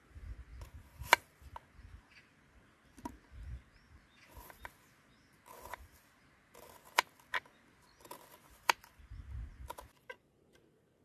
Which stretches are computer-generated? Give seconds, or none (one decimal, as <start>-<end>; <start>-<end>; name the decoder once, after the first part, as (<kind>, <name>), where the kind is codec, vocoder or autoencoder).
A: none